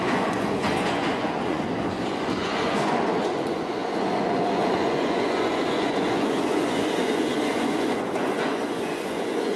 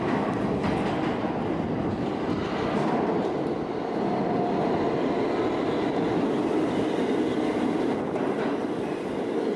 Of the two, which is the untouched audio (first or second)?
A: second